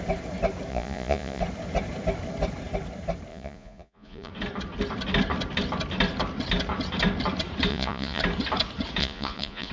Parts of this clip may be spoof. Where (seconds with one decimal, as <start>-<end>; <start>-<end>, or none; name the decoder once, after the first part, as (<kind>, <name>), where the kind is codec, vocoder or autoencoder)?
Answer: 0.7-1.4 (vocoder, Vocos); 3.3-4.3; 7.7-8.2; 9.0-9.7